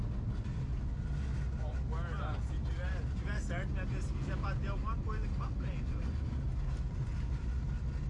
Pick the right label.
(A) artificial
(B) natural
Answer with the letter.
B